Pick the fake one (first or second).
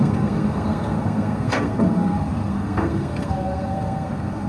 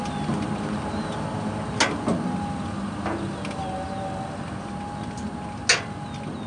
first